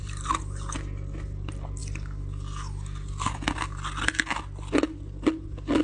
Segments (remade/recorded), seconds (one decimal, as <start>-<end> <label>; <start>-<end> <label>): 0.0-5.8 recorded